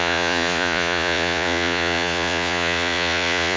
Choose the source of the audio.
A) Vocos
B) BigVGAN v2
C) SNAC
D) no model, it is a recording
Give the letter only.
A